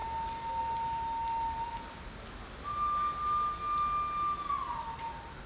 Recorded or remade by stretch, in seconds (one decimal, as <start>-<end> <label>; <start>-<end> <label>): 0.0-5.5 recorded